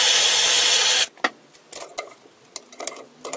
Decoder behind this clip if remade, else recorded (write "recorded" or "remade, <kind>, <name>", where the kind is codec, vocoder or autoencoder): recorded